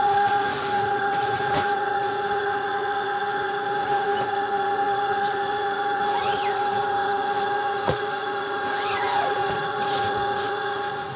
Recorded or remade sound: remade